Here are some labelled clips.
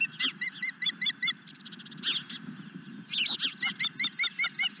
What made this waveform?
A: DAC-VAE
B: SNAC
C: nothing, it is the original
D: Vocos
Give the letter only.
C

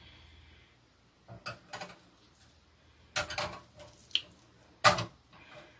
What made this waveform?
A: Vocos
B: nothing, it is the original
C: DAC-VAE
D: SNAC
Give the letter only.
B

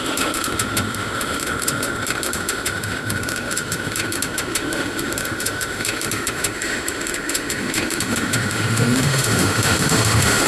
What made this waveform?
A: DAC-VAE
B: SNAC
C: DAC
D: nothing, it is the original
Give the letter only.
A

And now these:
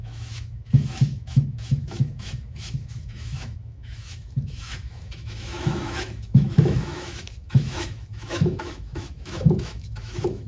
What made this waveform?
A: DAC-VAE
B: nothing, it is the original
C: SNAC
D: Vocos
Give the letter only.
A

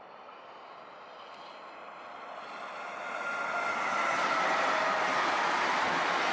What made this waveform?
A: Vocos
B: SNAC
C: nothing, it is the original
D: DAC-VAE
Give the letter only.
C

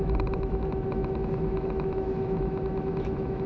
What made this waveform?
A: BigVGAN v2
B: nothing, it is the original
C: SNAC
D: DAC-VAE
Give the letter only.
D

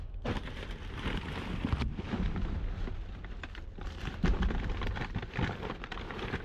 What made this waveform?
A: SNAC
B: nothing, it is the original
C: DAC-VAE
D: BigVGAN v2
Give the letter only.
B